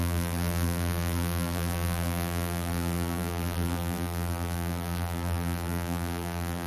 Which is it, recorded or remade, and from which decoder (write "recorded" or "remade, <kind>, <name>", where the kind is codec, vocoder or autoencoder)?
remade, vocoder, BigVGAN v2